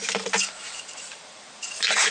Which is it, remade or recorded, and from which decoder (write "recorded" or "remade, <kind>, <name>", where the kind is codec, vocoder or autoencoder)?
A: remade, vocoder, BigVGAN v2